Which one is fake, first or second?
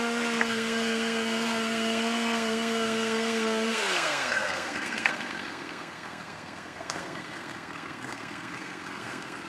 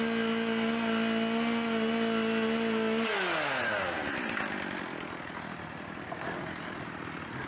first